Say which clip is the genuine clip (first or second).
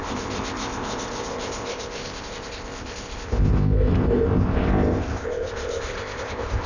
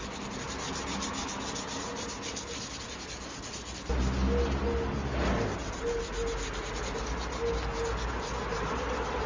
second